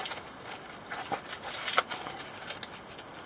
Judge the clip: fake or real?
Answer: real